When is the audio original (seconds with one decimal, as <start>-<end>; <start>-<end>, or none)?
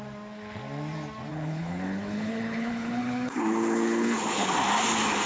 0.0-1.3; 4.5-5.3